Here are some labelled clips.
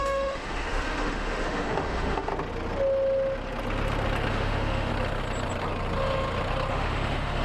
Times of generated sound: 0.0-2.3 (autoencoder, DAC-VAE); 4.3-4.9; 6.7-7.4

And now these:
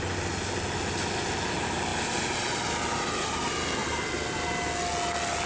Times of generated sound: none

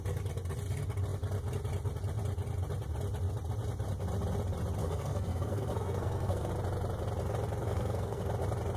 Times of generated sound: 4.8-6.5 (codec, SNAC); 7.6-8.2

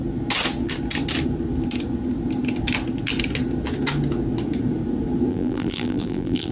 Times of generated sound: 5.3-6.5 (vocoder, BigVGAN v2)